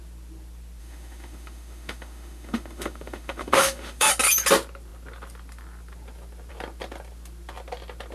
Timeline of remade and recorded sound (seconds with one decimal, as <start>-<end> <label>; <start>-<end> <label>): 0.0-0.8 recorded; 0.8-4.1 remade; 4.1-8.1 recorded